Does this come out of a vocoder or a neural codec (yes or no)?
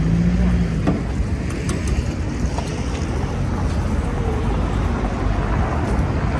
no